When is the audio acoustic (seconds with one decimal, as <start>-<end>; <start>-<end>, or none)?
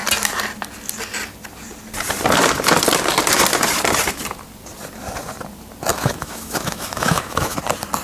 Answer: 0.0-5.9; 7.6-8.0